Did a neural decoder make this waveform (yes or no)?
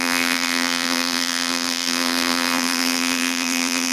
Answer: yes